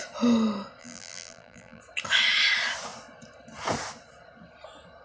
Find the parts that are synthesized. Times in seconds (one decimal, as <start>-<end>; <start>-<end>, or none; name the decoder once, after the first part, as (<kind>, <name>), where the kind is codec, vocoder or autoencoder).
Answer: 0.8-1.8 (vocoder, BigVGAN v2)